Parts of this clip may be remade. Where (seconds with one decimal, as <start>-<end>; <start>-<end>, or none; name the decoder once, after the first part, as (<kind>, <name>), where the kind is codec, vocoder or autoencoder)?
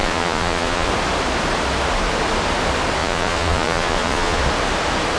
0.0-0.9 (vocoder, Vocos); 3.0-4.4